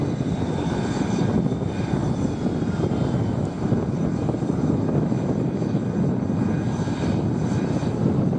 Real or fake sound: real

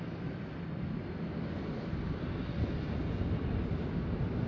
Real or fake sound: real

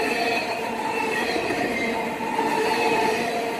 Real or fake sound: real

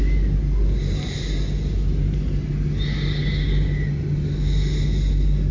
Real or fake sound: real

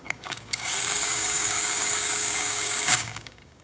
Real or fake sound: fake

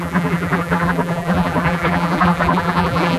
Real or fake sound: fake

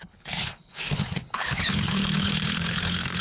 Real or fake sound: fake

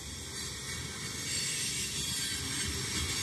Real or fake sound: real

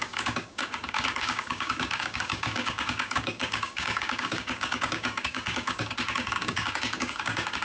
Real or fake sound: fake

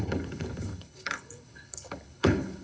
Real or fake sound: fake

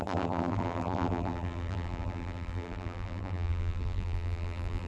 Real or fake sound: fake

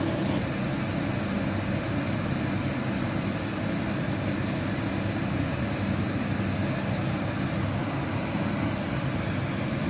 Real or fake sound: real